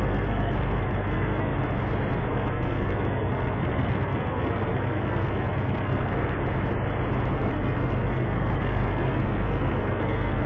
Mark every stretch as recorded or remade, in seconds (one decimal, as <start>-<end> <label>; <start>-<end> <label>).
0.0-1.5 remade; 1.5-2.3 recorded; 2.3-6.4 remade; 6.4-7.3 recorded; 7.3-10.5 remade